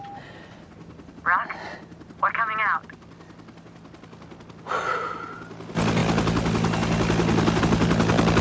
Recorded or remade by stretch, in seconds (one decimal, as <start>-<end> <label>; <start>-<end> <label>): 0.0-8.4 recorded